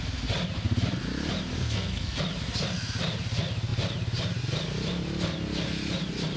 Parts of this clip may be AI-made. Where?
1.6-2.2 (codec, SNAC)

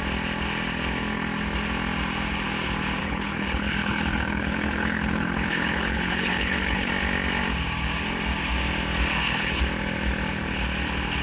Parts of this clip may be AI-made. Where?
3.0-6.9 (codec, HILCodec); 9.1-9.6

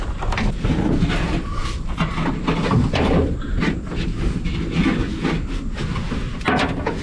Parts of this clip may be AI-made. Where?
none

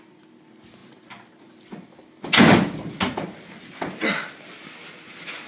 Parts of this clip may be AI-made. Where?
none